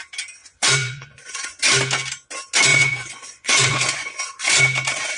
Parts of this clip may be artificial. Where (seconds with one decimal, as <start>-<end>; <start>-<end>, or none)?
0.4-1.6; 2.7-4.6